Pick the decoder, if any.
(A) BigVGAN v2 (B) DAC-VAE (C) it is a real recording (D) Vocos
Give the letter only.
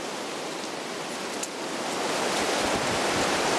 C